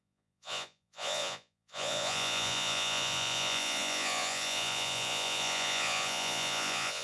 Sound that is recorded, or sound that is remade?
remade